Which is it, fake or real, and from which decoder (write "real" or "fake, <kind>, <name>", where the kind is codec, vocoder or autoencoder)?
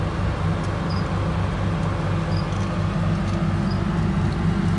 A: real